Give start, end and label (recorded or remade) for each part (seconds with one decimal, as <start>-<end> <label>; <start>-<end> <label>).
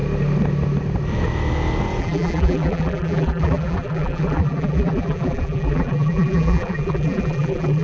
0.0-2.0 recorded; 2.0-7.8 remade